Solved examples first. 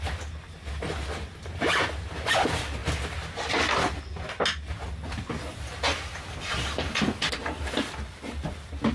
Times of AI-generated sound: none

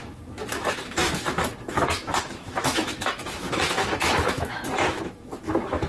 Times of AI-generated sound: 0.0-5.9